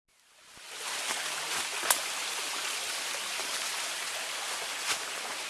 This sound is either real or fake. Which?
real